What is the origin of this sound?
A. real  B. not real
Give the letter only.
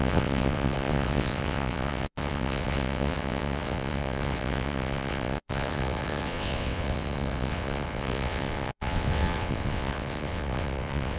B